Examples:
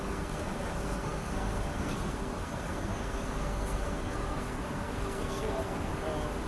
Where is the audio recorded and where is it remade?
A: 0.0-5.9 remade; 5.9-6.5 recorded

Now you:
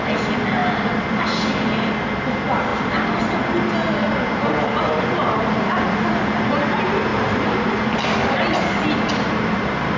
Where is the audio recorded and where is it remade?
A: 0.0-10.0 recorded